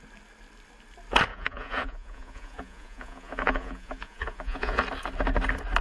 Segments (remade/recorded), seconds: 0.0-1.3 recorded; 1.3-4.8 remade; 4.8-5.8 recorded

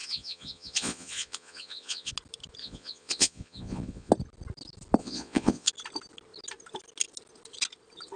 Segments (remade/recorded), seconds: 0.0-2.1 remade; 2.1-2.6 recorded; 2.6-4.1 remade; 4.1-5.0 recorded; 5.0-5.7 remade; 5.7-8.2 recorded

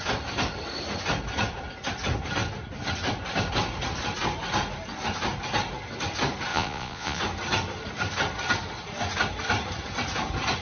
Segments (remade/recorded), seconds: 0.0-6.5 recorded; 6.5-7.2 remade; 7.2-10.6 recorded

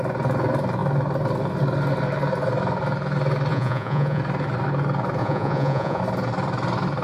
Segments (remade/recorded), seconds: 0.0-3.5 recorded; 3.5-4.2 remade; 4.2-5.2 recorded; 5.2-6.0 remade; 6.0-7.0 recorded

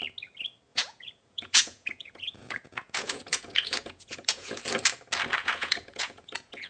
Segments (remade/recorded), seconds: 0.0-0.7 recorded; 0.7-4.6 remade; 4.6-5.4 recorded; 5.4-6.7 remade

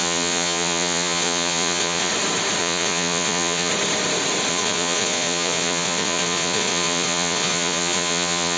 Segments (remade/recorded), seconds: 0.0-2.1 remade; 2.1-2.6 recorded; 2.6-3.7 remade; 3.7-4.5 recorded; 4.5-8.6 remade